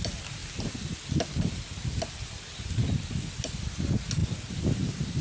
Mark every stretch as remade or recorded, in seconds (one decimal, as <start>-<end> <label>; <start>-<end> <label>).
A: 0.0-5.2 recorded